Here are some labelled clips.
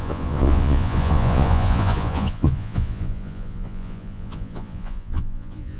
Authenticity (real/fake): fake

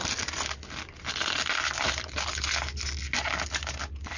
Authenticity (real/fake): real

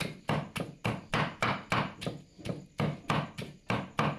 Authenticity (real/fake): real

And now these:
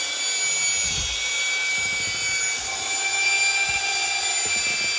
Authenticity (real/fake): real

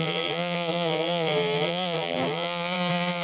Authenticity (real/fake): fake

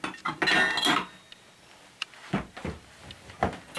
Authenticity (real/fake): real